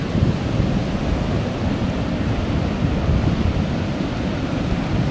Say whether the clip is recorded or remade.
recorded